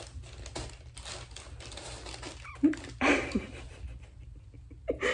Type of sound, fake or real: real